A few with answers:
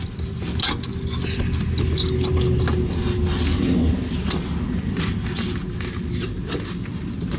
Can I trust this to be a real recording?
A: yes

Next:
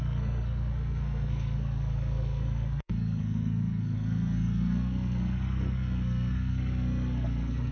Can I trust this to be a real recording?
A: no